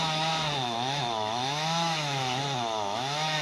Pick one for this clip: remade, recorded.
remade